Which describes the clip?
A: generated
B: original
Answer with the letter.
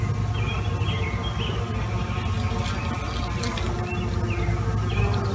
B